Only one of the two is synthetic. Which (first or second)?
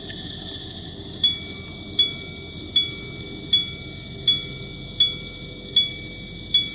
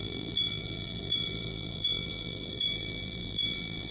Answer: second